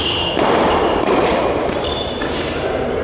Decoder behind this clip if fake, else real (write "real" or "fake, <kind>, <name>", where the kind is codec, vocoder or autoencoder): fake, vocoder, BigVGAN v2